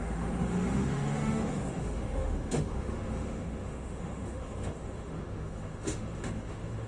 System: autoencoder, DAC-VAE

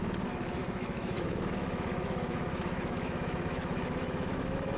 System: autoencoder, DAC-VAE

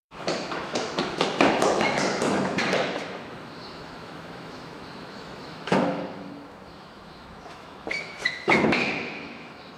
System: autoencoder, DAC-VAE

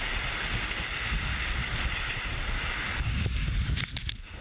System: none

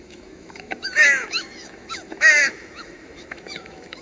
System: autoencoder, DAC-VAE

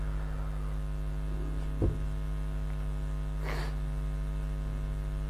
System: none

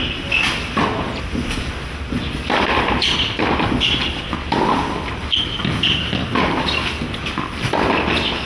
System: none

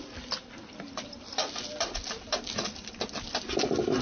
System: none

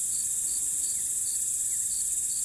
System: none